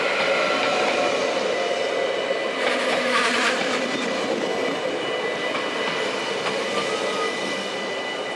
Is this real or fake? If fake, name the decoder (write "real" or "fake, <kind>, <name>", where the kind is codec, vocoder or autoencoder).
real